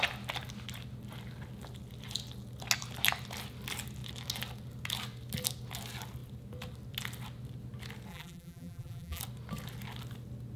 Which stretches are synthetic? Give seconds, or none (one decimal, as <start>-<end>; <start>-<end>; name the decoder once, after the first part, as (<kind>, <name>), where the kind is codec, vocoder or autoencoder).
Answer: 8.1-9.2 (vocoder, BigVGAN v2)